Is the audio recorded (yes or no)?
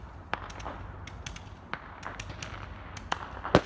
yes